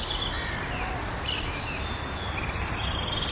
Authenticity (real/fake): real